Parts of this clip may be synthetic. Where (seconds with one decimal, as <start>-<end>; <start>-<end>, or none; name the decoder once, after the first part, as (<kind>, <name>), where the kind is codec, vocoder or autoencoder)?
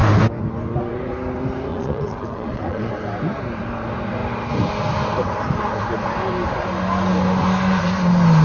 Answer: 1.7-2.9 (vocoder, Vocos)